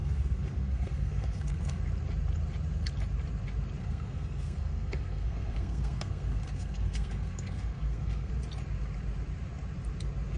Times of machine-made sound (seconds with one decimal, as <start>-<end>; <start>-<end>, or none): 0.0-1.8; 3.8-8.3